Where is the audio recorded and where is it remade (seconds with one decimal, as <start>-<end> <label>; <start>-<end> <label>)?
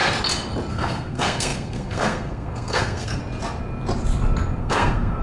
0.0-0.7 recorded; 0.7-3.2 remade; 3.2-4.6 recorded; 4.6-5.2 remade